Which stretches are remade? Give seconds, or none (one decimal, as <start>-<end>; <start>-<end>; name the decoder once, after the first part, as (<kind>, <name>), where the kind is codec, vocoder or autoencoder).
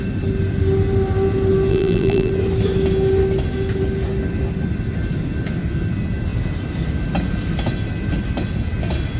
1.7-2.3 (vocoder, BigVGAN v2)